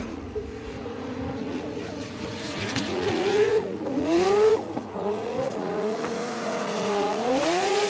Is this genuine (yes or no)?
no